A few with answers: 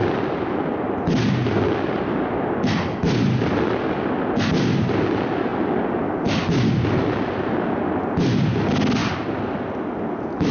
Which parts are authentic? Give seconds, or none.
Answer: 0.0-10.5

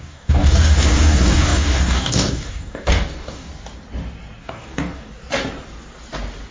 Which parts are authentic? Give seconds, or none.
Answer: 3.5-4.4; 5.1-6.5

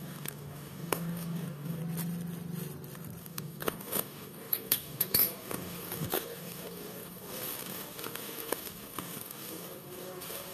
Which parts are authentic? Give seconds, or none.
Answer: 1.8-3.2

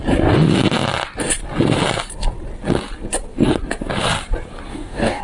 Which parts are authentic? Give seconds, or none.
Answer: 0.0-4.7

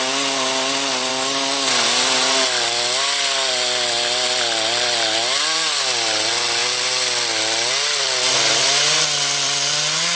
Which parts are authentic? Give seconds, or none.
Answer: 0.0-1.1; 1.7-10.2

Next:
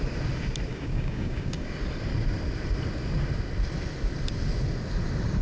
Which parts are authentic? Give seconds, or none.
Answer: 0.0-0.7; 1.7-5.4